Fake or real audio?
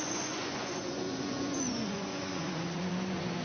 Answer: fake